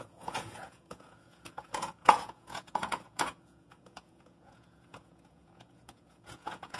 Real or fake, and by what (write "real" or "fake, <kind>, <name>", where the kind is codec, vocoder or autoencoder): fake, vocoder, Vocos